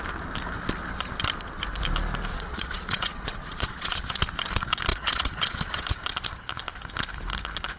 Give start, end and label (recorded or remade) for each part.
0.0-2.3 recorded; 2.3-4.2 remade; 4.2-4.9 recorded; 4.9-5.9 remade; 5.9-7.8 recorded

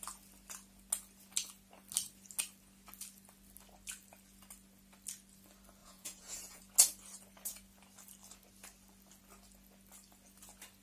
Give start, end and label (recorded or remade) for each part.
0.0-5.8 recorded; 5.8-6.6 remade; 6.6-10.8 recorded